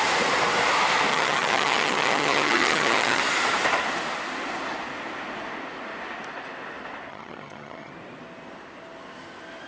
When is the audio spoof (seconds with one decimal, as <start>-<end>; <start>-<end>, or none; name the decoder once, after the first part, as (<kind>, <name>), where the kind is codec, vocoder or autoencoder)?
1.1-3.2 (vocoder, HiFi-GAN); 7.1-7.9